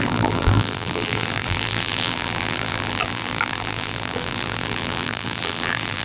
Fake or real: fake